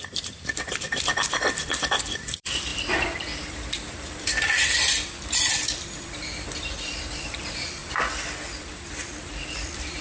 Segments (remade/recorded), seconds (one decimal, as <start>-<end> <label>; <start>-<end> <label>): 0.0-7.8 remade; 7.8-8.6 recorded; 8.6-10.0 remade